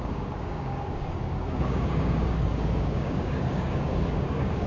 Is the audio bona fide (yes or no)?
no